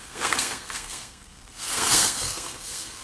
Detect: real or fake fake